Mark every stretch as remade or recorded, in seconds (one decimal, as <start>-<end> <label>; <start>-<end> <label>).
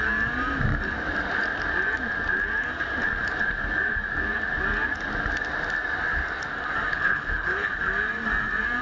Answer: 0.0-6.9 recorded; 6.9-7.7 remade; 7.7-8.8 recorded